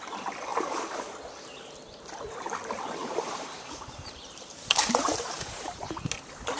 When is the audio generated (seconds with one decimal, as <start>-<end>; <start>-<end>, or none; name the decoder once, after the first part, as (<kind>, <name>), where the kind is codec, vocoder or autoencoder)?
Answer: 3.0-5.8 (vocoder, BigVGAN v2)